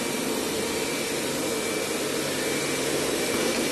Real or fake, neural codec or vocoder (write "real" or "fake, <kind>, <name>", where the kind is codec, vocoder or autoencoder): real